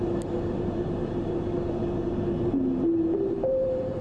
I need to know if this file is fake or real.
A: fake